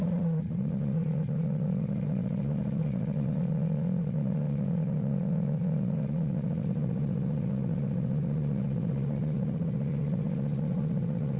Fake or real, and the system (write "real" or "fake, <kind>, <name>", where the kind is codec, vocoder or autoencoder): fake, vocoder, Vocos